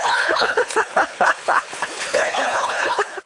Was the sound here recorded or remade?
remade